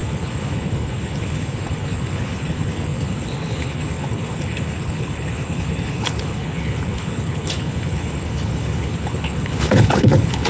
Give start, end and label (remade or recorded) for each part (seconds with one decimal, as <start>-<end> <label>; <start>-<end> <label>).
0.0-10.5 remade